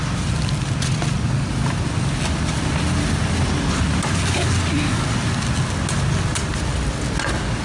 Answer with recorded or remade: recorded